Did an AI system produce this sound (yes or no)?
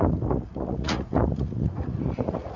yes